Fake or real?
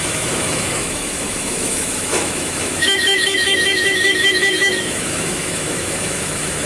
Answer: fake